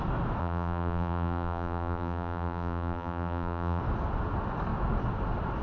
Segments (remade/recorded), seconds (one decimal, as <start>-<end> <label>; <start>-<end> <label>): 0.0-0.4 recorded; 0.4-3.8 remade; 3.8-5.6 recorded